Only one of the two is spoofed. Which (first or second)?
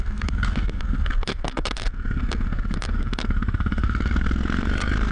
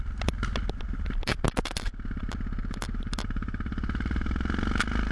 first